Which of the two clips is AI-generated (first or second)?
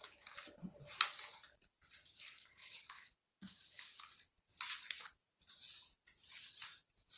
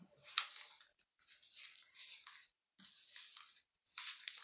first